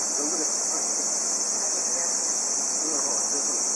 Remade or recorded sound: recorded